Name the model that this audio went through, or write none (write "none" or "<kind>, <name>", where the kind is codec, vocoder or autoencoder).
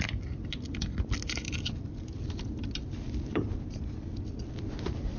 none